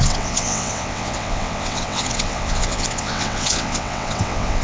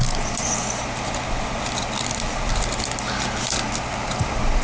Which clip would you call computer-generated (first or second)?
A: first